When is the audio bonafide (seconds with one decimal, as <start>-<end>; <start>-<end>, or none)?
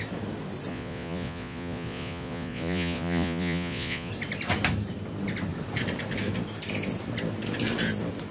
0.0-0.7; 4.1-8.3